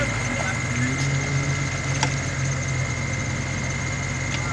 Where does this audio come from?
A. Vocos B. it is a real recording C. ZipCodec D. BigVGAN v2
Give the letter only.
B